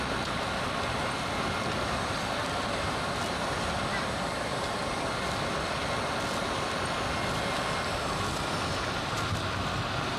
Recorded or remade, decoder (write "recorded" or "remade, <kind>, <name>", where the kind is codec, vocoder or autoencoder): recorded